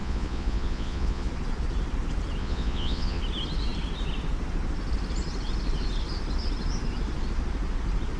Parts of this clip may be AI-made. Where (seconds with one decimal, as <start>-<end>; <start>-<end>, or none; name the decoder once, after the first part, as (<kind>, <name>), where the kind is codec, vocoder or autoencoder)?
0.0-1.3 (vocoder, Vocos); 2.4-3.2